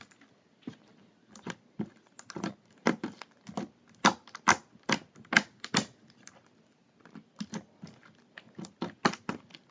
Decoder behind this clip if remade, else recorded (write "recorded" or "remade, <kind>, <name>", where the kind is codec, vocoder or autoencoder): recorded